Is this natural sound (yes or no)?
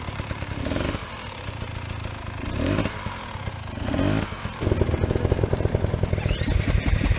yes